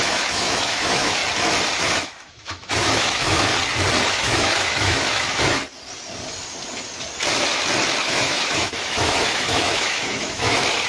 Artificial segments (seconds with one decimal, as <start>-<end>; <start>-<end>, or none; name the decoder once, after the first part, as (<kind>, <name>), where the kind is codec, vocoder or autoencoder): 0.0-1.2 (autoencoder, DAC-VAE); 1.8-3.5; 4.1-5.6; 8.0-10.9